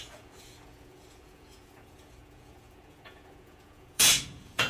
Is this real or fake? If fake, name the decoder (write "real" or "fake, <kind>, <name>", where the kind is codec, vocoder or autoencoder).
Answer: fake, vocoder, Vocos